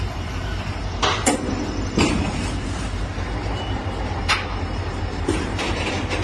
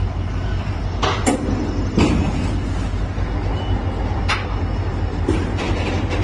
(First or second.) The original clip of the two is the second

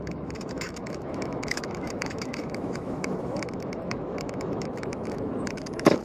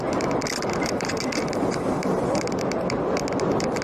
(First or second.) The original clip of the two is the second